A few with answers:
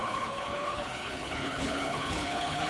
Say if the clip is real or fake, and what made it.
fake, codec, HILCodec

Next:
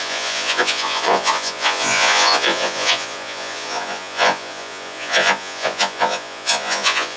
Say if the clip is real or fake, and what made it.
fake, vocoder, Vocos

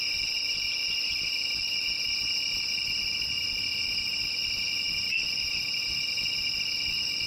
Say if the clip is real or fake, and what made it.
real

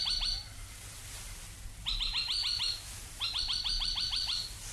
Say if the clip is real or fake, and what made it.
real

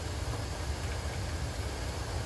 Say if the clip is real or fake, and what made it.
real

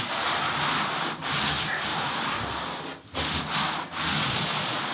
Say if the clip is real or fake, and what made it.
real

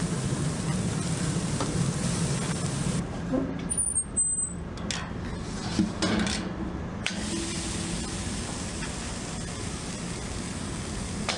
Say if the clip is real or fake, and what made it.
real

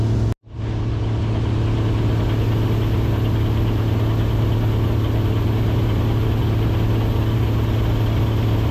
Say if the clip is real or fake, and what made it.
real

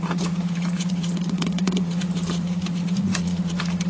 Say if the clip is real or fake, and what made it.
fake, vocoder, Vocos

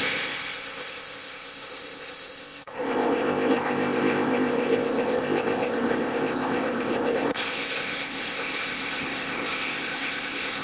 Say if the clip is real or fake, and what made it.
fake, codec, ZipCodec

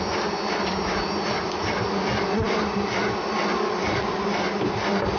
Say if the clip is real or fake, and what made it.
real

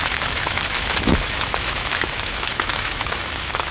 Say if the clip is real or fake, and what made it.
fake, autoencoder, DAC-VAE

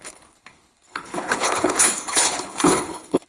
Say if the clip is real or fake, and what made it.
fake, codec, HILCodec